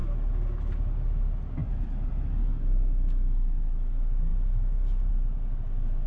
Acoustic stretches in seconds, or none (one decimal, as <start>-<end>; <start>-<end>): 0.0-6.1